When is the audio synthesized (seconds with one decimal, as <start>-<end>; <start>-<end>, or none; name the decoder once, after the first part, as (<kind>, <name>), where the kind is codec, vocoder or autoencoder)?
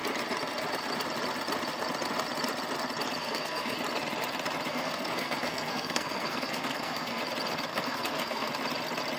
3.2-3.8 (codec, SNAC); 4.7-7.2; 7.7-8.5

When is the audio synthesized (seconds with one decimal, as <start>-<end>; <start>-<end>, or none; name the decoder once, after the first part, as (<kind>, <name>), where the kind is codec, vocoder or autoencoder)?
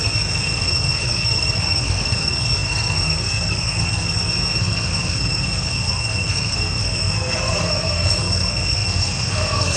0.0-9.8 (codec, SNAC)